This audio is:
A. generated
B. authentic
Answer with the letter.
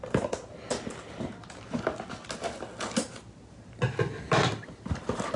B